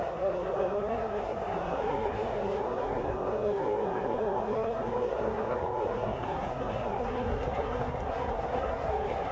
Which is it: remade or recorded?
remade